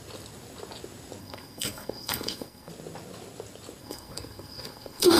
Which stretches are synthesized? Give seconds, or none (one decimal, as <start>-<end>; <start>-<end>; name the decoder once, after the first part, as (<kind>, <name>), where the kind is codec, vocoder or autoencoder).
1.2-2.7 (codec, SNAC); 3.8-5.2